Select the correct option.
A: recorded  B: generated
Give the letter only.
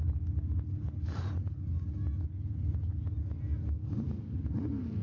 A